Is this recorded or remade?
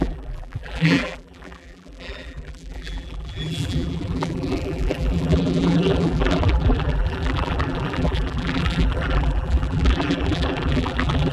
remade